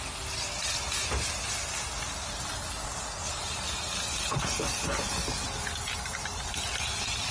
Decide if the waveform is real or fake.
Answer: real